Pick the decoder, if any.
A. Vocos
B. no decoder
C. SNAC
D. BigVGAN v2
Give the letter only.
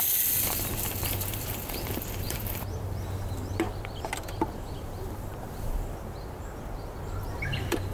D